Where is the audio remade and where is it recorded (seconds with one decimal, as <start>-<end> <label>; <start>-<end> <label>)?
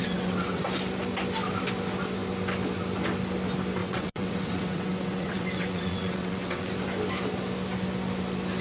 0.0-0.6 remade; 0.6-3.8 recorded; 3.8-6.7 remade; 6.7-8.6 recorded